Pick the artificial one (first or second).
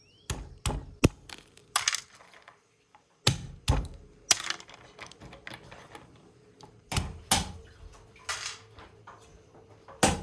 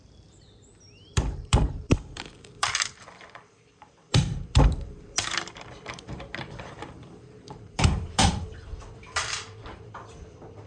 second